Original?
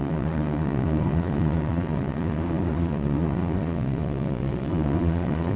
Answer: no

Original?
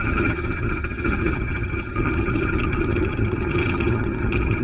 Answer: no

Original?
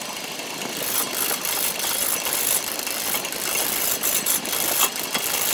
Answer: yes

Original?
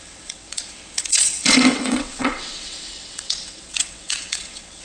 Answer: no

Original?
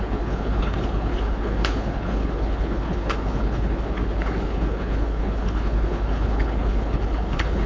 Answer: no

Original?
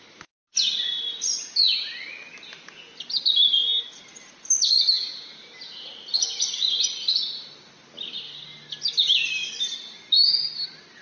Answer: yes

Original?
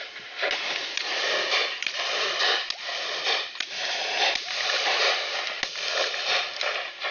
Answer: yes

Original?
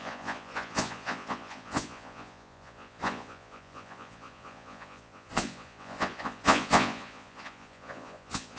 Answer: no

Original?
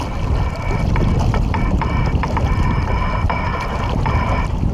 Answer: yes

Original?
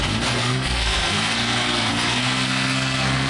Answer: no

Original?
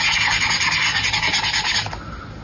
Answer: yes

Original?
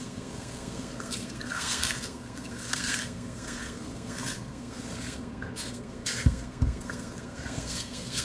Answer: no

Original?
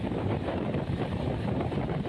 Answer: no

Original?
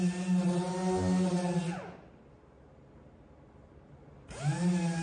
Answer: yes